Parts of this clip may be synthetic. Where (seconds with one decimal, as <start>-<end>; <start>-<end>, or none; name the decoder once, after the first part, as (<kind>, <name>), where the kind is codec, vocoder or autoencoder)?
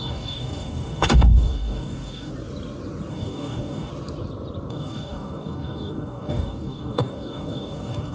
0.0-2.3 (codec, DAC); 3.1-3.9; 4.7-8.1